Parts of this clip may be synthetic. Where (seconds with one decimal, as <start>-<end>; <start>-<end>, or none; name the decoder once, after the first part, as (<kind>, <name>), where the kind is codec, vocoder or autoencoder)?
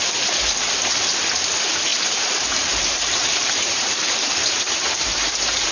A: 1.9-5.3 (vocoder, BigVGAN v2)